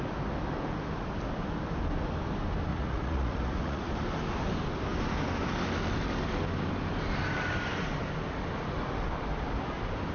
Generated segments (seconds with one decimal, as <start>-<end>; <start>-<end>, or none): 2.7-3.8